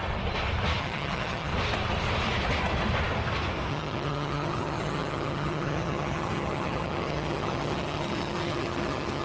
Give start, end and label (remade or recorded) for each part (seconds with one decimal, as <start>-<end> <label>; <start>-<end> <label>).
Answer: 0.0-0.8 recorded; 0.8-1.5 remade; 1.5-3.7 recorded; 3.7-9.2 remade